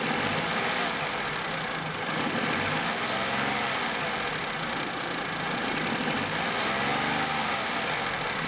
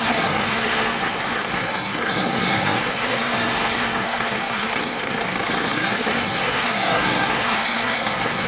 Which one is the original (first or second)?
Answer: first